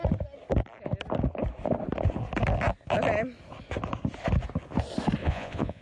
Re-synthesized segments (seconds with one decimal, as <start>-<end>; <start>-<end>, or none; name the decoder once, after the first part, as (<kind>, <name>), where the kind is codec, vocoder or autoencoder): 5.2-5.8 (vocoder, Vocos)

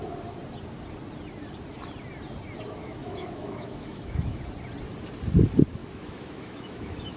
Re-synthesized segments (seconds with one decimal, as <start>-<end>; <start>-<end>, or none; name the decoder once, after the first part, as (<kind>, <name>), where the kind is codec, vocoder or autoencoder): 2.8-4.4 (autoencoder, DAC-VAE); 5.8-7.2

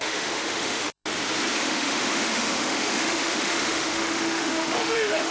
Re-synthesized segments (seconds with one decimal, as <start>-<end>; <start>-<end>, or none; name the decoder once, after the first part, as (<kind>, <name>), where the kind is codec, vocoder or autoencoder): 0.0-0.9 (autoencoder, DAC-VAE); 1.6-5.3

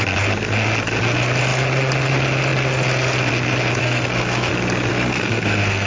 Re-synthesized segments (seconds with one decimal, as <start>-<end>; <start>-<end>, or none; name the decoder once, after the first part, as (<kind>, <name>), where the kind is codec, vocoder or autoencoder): 3.8-4.5 (codec, SNAC); 4.9-5.9

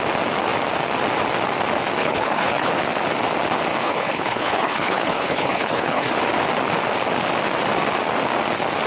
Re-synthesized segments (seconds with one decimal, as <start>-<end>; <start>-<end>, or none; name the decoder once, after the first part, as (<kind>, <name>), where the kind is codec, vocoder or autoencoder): 2.0-2.7 (codec, HILCodec); 3.8-6.1